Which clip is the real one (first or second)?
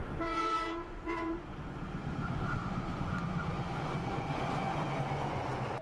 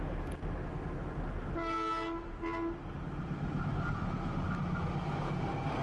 second